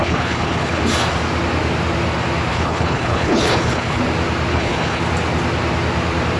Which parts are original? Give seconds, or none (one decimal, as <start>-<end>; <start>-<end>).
0.8-2.5; 4.0-4.5; 5.0-6.4

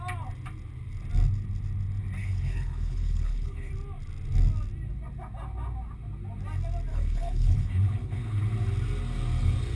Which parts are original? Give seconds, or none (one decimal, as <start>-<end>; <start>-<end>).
0.0-2.2; 3.7-6.9; 8.4-9.8

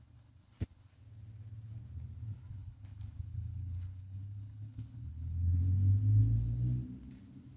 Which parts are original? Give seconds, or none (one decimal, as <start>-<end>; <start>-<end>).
0.9-2.5; 5.6-7.6

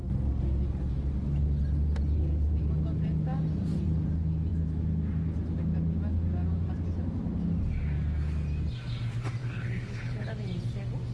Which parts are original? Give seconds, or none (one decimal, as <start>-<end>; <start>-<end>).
0.0-9.4; 10.3-11.1

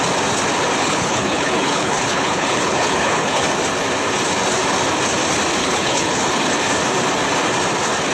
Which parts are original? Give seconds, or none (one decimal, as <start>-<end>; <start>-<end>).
0.0-0.8; 3.4-5.6; 6.5-8.1

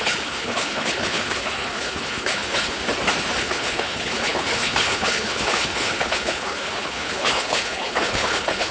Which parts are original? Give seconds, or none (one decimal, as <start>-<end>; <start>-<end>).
2.8-3.4